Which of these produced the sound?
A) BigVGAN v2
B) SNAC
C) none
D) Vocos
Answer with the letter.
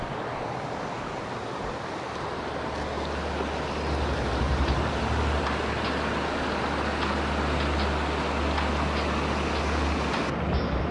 C